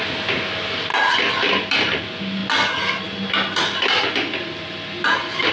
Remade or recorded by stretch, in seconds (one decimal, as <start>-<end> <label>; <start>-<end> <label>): 0.0-5.5 recorded